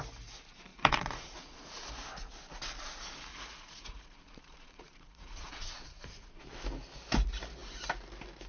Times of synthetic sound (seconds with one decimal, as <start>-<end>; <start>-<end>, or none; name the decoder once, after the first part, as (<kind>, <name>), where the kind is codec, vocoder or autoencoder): 0.7-1.9 (vocoder, Vocos); 3.3-6.4